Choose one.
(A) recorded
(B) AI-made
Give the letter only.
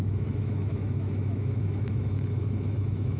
B